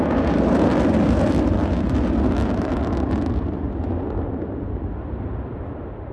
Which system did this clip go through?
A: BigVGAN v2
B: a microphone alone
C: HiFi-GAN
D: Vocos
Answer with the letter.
A